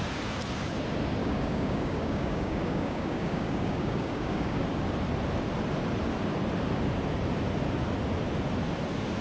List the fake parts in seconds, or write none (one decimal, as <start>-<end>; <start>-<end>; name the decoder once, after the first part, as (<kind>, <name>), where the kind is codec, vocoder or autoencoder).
1.2-4.6 (codec, DAC)